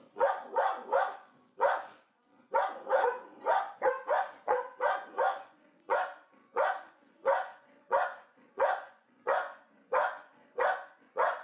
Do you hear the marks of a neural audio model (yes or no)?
yes